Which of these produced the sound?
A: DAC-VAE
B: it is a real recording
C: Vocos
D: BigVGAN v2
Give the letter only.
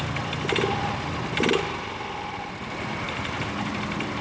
B